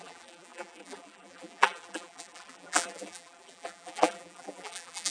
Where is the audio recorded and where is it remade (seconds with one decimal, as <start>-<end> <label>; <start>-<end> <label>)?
0.0-5.1 remade